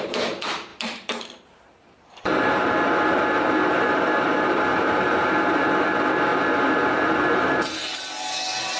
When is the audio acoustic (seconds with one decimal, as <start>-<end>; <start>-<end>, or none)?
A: 7.8-8.8